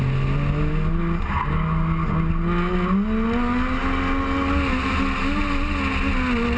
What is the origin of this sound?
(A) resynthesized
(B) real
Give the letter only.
B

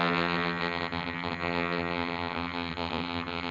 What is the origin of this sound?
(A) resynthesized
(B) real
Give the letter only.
A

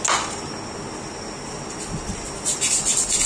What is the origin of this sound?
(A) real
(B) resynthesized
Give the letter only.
A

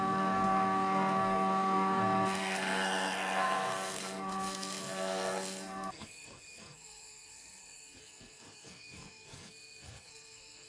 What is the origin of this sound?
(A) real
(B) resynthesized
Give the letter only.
B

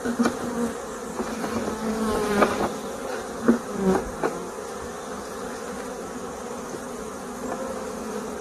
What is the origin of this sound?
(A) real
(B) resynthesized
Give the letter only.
A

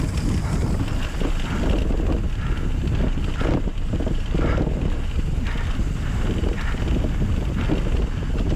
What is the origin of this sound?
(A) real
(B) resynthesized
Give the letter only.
A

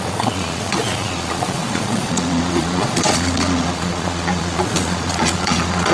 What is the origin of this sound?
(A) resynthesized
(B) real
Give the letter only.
A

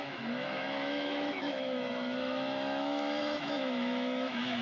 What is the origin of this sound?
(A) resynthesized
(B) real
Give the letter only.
A